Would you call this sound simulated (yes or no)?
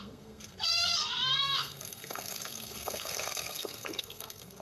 yes